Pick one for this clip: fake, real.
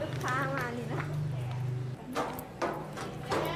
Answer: real